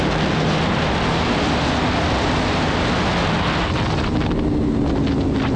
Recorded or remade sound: recorded